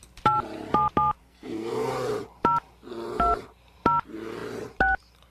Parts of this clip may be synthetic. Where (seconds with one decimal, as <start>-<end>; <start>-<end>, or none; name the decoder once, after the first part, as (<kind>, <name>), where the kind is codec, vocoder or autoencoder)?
1.2-1.9 (codec, SNAC)